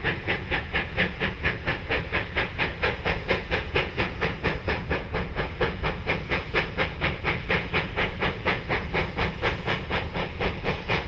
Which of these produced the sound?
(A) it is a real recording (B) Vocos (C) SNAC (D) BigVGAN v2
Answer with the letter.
B